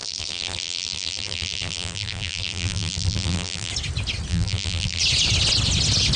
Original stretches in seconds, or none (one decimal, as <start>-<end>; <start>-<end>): 3.7-4.3; 5.0-6.2